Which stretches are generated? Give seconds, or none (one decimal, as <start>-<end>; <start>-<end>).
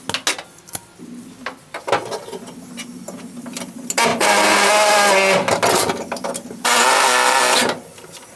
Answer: none